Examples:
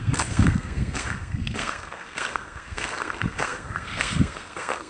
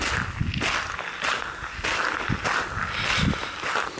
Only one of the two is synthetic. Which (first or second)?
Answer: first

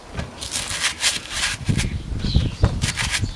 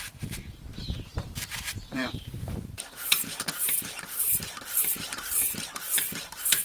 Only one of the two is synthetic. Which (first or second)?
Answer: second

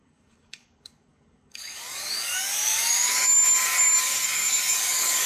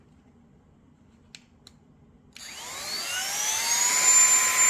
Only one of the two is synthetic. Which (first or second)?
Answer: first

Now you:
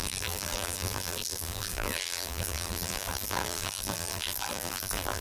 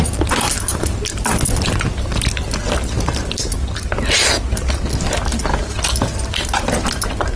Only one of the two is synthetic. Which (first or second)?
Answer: first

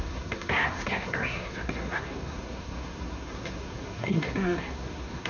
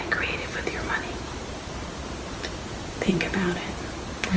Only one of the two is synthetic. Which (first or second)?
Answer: first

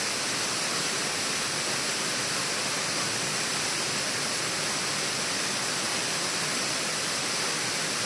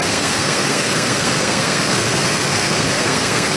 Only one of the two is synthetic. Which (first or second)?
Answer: second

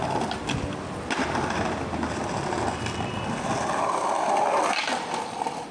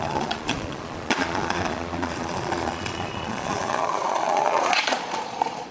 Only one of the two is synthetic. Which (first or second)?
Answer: second